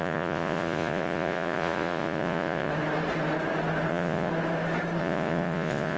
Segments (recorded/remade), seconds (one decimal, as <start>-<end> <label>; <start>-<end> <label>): 0.0-2.7 remade; 2.7-3.9 recorded; 3.9-4.3 remade; 4.3-5.0 recorded; 5.0-6.0 remade